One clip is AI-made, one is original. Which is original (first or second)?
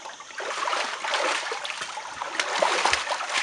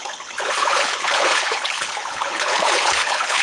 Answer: first